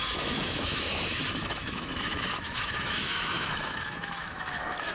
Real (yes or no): no